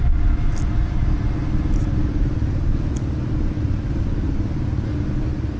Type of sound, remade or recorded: recorded